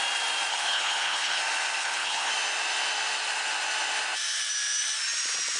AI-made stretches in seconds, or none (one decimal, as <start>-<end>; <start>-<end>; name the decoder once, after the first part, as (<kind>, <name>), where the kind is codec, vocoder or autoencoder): 0.5-1.4 (codec, HILCodec); 1.8-2.3